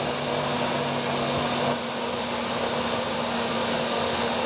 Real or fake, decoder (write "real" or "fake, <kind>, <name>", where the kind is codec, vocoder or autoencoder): real